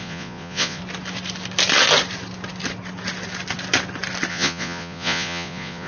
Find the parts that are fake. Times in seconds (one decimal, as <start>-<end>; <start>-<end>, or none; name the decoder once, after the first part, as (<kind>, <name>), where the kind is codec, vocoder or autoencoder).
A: 0.0-0.8 (vocoder, Vocos); 4.3-5.9